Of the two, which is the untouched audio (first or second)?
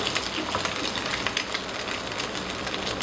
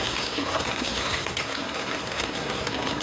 first